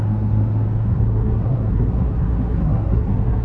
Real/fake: fake